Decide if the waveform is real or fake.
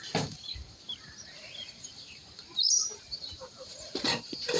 fake